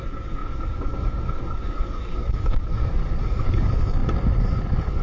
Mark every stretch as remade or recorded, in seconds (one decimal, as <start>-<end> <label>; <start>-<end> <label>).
0.0-3.0 remade; 3.0-3.5 recorded; 3.5-4.0 remade; 4.0-5.0 recorded